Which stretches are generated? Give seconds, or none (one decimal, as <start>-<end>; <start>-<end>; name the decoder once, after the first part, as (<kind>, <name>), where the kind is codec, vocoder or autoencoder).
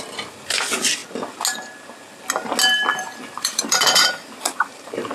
2.9-5.1 (vocoder, BigVGAN v2)